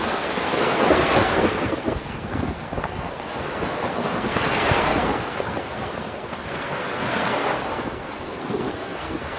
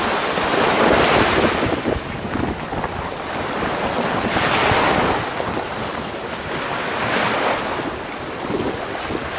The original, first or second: second